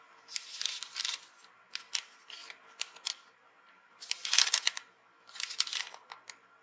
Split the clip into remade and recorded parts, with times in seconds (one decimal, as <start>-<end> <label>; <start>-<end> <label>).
0.0-6.6 recorded